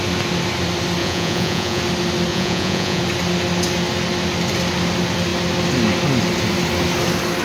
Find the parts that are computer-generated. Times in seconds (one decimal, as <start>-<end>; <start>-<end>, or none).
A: 1.0-1.8; 2.3-3.0